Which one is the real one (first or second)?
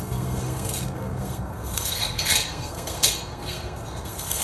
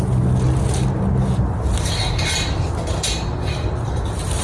second